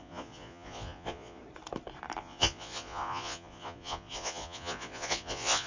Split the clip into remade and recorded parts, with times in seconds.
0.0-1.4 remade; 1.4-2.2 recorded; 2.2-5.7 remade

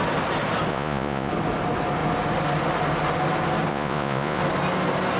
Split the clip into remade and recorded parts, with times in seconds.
0.0-0.7 recorded; 0.7-1.3 remade; 1.3-3.7 recorded; 3.7-4.4 remade; 4.4-5.2 recorded

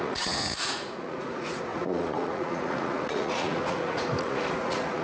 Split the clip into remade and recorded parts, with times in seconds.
0.0-5.0 remade

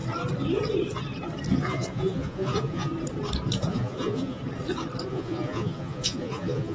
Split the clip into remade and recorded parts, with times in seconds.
0.0-1.6 recorded; 1.6-2.9 remade; 2.9-3.7 recorded; 3.7-4.4 remade; 4.4-5.1 recorded; 5.1-6.7 remade

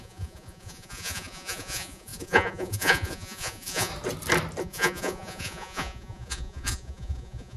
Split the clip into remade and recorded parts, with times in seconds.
0.0-3.9 remade; 3.9-4.6 recorded; 4.6-7.6 remade

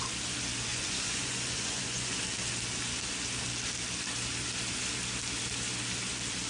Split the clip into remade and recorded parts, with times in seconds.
0.0-0.7 recorded; 0.7-2.2 remade; 2.2-6.5 recorded